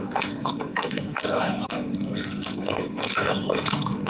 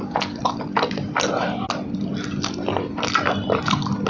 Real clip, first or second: second